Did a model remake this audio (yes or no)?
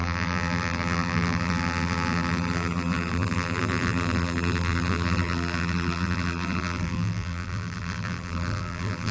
yes